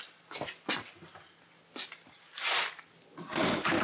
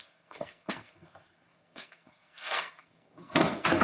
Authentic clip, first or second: first